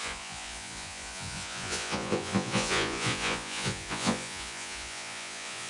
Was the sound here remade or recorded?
remade